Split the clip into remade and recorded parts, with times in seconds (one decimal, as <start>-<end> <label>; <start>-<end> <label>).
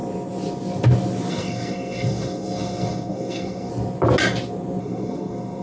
0.0-1.3 recorded; 1.3-3.7 remade; 3.7-4.8 recorded; 4.8-5.6 remade